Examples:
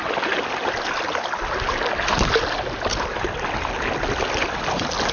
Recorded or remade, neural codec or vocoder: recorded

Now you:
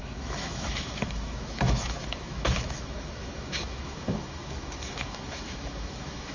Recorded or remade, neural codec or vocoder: remade, autoencoder, DAC-VAE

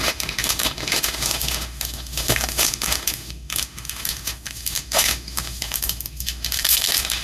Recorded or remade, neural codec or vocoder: remade, autoencoder, DAC-VAE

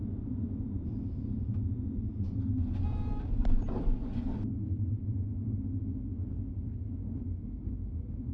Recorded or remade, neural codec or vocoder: recorded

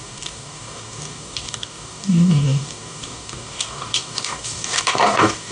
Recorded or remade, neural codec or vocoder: remade, codec, DAC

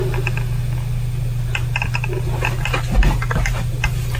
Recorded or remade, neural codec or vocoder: recorded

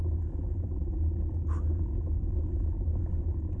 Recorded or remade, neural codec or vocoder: recorded